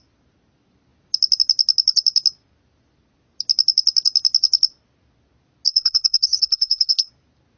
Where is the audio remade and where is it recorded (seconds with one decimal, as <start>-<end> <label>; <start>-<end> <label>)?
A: 0.0-5.7 recorded; 5.7-7.1 remade; 7.1-7.6 recorded